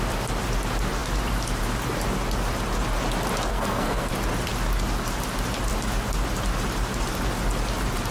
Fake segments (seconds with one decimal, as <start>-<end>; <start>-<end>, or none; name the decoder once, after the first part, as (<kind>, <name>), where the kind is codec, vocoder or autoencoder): 3.5-4.1 (codec, SNAC)